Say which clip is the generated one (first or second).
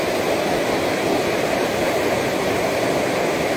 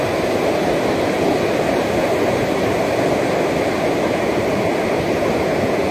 second